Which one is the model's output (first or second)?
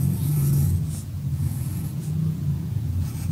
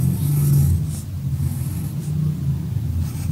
first